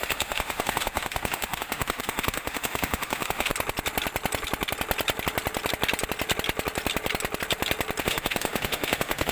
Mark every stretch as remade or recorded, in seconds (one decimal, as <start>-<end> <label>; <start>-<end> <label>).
0.0-3.5 remade; 3.5-8.0 recorded; 8.0-9.3 remade

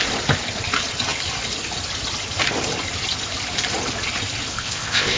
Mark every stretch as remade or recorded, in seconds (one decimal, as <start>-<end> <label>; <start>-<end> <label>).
0.0-4.5 recorded; 4.5-5.2 remade

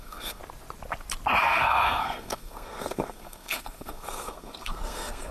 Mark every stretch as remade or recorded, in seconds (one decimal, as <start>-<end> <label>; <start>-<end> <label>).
0.0-0.4 remade; 0.4-1.4 recorded; 1.4-5.3 remade

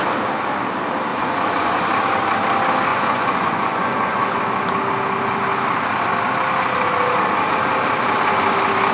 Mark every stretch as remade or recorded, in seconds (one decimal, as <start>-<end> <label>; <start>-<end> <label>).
0.0-1.1 recorded; 1.1-1.9 remade; 1.9-2.9 recorded; 2.9-4.4 remade; 4.4-8.9 recorded

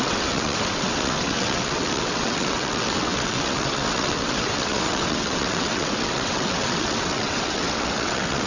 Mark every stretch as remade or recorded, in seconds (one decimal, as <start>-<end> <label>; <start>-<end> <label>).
0.0-8.5 remade